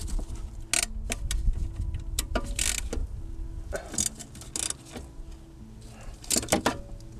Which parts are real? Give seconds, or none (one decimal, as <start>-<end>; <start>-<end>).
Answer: 0.0-7.2